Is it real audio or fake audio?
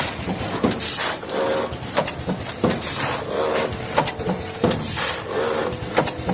real